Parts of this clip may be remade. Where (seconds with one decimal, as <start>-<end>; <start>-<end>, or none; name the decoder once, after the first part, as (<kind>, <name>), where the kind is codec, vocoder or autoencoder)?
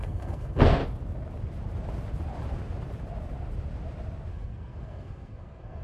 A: 0.0-0.8 (codec, SNAC); 4.3-5.8